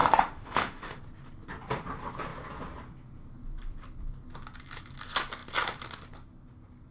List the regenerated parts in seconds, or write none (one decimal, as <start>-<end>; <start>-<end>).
0.0-1.0